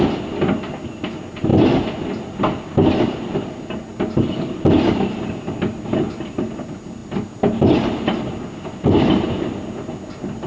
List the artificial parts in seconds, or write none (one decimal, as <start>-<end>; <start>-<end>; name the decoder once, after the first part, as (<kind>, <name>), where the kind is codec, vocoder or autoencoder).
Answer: none